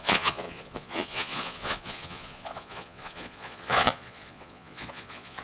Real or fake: fake